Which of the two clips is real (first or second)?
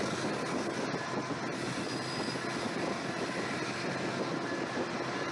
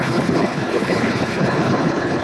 first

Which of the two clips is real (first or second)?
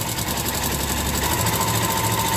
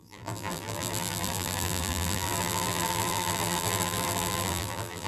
first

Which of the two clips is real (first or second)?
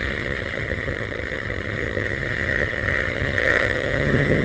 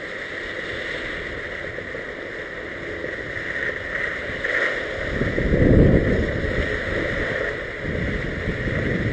second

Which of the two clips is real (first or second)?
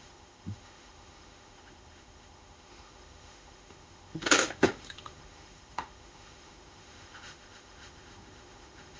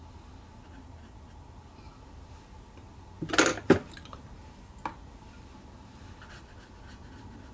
second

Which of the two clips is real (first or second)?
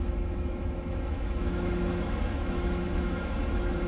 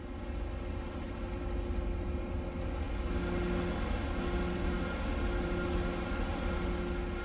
second